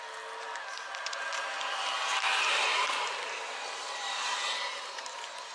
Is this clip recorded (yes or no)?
yes